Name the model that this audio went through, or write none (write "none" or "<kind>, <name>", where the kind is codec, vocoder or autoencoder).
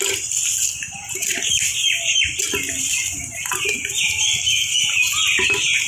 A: none